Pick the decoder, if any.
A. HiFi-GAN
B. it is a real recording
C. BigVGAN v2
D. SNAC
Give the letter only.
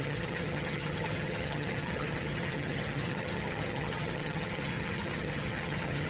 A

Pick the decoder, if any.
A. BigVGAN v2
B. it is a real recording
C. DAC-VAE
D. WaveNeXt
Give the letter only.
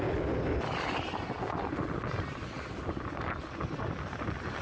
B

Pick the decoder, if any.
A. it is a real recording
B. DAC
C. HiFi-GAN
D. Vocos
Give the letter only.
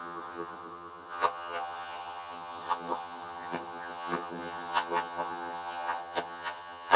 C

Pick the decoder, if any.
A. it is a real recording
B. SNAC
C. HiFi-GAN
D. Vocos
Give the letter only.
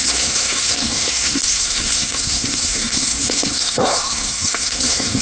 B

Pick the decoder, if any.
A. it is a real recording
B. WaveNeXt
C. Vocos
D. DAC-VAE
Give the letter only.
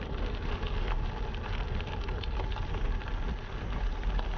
A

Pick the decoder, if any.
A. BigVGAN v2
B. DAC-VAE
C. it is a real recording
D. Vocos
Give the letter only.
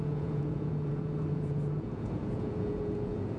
D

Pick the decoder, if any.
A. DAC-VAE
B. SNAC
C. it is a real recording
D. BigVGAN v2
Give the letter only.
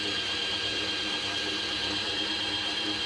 C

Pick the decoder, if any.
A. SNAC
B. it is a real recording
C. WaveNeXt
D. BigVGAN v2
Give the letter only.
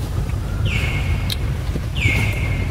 D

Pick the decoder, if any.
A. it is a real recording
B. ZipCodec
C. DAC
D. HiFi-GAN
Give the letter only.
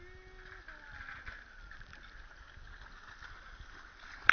A